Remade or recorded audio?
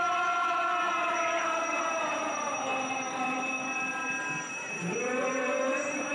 recorded